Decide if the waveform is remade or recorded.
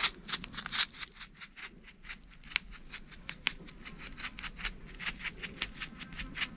recorded